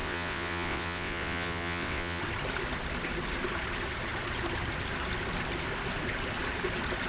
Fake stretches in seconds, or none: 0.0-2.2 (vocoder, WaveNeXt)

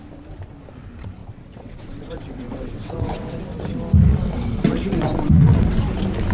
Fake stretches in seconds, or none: 1.2-3.4 (vocoder, WaveNeXt); 4.1-5.8

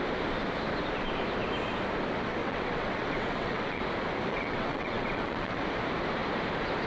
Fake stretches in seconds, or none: 2.4-3.8 (vocoder, WaveNeXt); 4.3-5.6

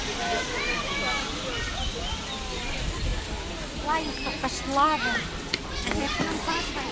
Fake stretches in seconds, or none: none